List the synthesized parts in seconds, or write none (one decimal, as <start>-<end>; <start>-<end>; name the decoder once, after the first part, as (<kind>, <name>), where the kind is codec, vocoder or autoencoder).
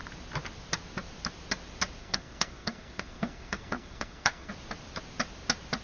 2.0-4.5 (codec, SNAC)